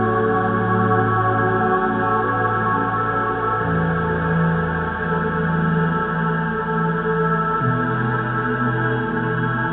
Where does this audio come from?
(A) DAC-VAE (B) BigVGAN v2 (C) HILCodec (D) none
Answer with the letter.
D